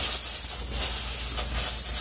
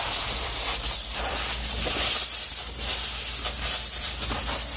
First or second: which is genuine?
first